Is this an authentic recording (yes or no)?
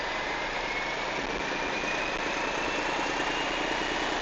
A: yes